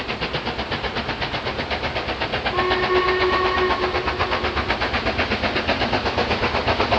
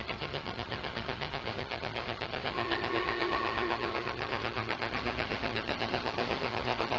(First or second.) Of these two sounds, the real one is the first